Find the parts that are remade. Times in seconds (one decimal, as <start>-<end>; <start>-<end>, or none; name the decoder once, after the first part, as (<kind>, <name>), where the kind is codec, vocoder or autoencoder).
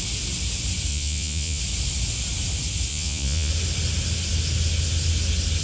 0.9-1.6 (vocoder, Vocos); 2.9-3.5